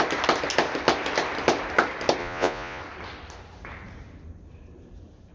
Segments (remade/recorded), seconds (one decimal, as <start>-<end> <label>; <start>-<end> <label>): 0.0-2.2 recorded; 2.2-2.8 remade; 2.8-5.3 recorded

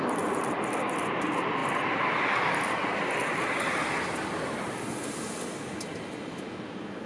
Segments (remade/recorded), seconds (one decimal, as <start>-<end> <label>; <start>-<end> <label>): 0.0-7.1 recorded

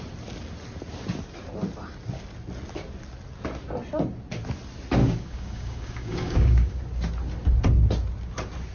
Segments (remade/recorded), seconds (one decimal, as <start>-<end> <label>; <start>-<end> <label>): 0.0-5.0 recorded; 5.0-6.8 remade; 6.8-8.7 recorded

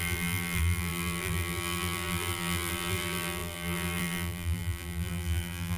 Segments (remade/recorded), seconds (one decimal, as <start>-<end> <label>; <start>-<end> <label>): 0.0-5.8 remade